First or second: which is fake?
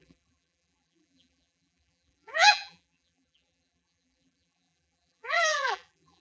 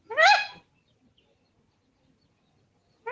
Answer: first